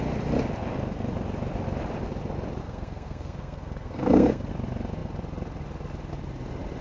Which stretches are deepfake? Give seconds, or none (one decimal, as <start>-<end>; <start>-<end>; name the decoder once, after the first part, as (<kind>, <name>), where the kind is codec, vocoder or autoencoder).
2.6-4.5 (codec, SNAC)